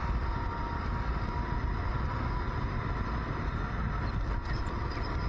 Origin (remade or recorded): recorded